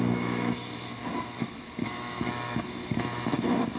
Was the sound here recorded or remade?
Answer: remade